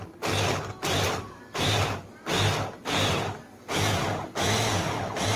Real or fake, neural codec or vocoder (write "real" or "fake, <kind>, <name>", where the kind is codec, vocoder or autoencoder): real